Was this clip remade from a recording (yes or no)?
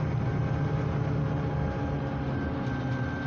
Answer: no